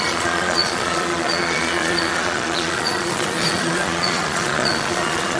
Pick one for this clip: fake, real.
fake